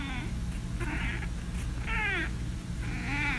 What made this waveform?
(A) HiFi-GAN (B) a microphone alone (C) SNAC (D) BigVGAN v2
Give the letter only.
B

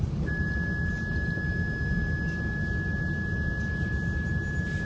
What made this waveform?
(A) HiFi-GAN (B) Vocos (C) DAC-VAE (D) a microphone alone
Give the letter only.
D